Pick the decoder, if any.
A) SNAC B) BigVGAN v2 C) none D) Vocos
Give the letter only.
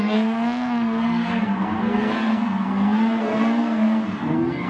A